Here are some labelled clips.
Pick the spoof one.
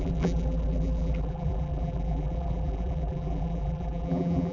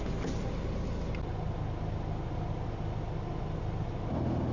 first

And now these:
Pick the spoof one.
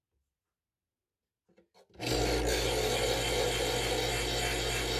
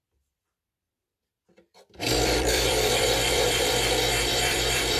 second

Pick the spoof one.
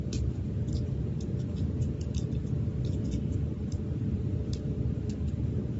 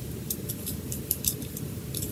second